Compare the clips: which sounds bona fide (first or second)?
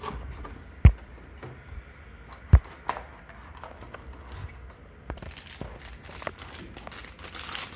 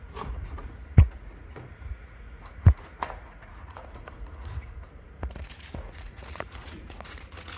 first